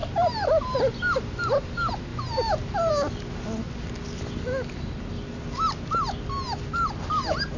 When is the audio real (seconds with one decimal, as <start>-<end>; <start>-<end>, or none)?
0.6-2.1; 2.9-7.6